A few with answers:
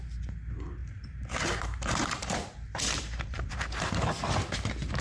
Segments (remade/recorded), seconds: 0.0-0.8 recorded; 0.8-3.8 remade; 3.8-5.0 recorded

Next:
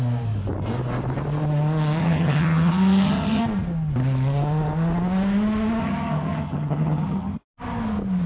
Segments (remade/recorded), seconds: 0.0-2.0 recorded; 2.0-3.4 remade; 3.4-5.8 recorded; 5.8-7.4 remade; 7.4-8.3 recorded

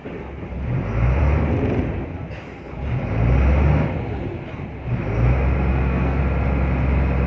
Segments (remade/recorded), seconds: 0.0-5.7 recorded; 5.7-6.2 remade; 6.2-7.3 recorded

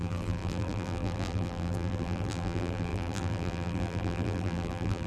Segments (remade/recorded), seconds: 0.0-5.1 remade